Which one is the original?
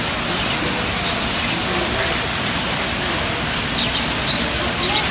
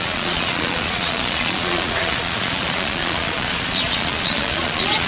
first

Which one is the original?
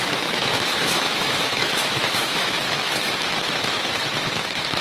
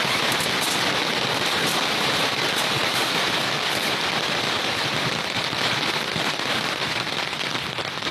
second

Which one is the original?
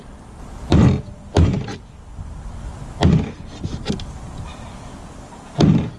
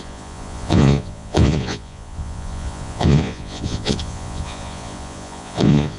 first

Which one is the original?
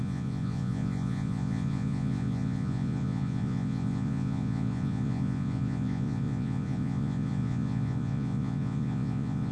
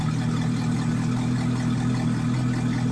second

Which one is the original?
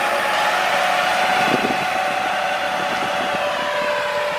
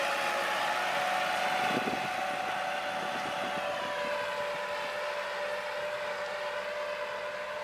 second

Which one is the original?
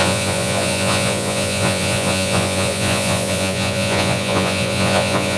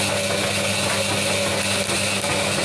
second